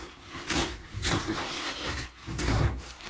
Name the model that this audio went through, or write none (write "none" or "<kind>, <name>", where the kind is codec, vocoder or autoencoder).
codec, SNAC